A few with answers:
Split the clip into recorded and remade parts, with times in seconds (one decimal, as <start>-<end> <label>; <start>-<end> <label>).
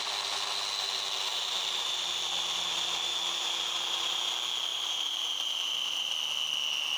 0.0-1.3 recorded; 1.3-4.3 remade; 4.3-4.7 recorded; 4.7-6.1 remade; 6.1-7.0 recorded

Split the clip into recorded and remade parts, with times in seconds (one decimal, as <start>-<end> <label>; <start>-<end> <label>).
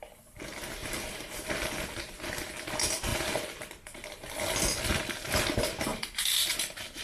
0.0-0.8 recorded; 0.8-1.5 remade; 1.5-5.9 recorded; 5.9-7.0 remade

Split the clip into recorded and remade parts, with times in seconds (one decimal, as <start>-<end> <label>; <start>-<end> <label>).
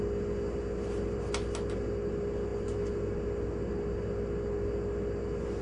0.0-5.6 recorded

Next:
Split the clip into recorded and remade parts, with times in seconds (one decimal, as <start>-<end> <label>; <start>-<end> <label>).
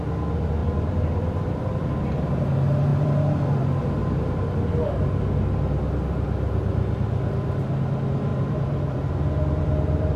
0.0-0.6 recorded; 0.6-1.9 remade; 1.9-2.9 recorded; 2.9-3.6 remade; 3.6-8.3 recorded; 8.3-10.2 remade